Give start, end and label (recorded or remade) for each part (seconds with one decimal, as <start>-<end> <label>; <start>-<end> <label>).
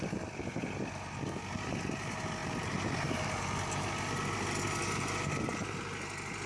0.0-6.5 recorded